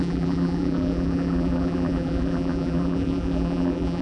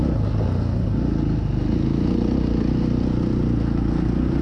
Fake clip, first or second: first